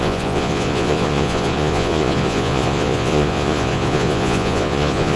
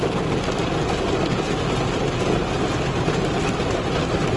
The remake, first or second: first